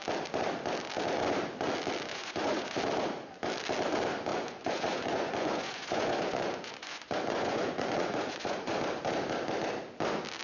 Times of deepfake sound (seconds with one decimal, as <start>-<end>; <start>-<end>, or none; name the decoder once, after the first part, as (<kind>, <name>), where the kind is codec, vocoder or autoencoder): 2.1-2.8 (vocoder, Vocos); 4.3-8.8